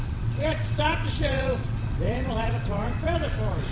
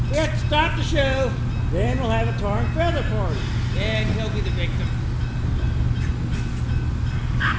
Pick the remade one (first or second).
first